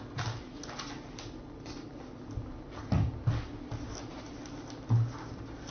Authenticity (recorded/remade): recorded